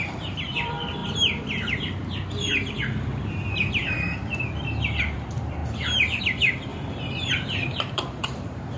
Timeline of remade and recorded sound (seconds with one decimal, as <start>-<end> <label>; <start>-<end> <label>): 0.0-5.6 remade; 5.6-6.2 recorded; 6.2-8.8 remade